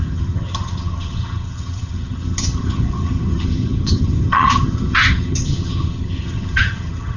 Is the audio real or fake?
fake